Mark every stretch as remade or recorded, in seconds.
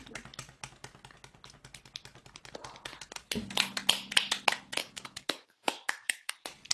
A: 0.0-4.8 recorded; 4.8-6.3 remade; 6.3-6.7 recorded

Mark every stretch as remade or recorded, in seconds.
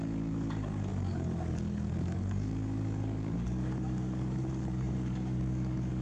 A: 0.0-6.0 remade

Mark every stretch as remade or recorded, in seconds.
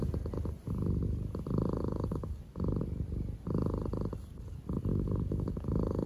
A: 0.0-1.8 recorded; 1.8-2.8 remade; 2.8-4.9 recorded; 4.9-6.1 remade